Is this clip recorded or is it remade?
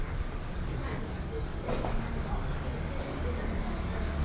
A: remade